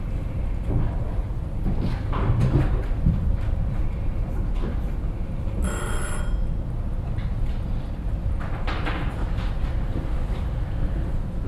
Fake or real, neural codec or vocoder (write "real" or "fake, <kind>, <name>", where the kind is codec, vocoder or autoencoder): real